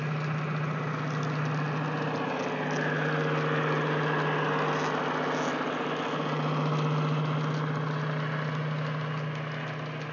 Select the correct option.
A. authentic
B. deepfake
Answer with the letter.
A